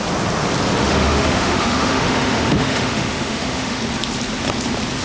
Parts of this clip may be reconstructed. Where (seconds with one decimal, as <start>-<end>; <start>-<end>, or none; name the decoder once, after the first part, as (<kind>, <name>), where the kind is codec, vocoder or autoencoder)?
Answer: 0.8-3.8 (autoencoder, DAC-VAE)